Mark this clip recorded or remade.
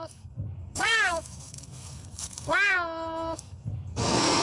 remade